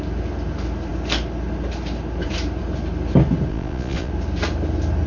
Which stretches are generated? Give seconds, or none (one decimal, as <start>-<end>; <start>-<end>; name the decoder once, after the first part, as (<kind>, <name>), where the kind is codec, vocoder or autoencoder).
3.5-4.1 (vocoder, Vocos)